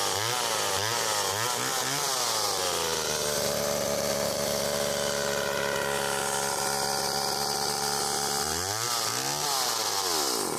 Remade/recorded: recorded